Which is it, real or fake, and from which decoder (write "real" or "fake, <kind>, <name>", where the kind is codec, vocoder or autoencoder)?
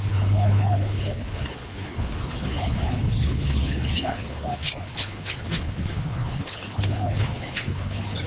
fake, codec, HILCodec